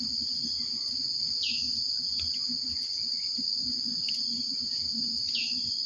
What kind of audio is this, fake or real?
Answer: real